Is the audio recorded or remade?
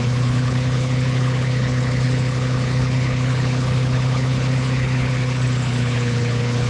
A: remade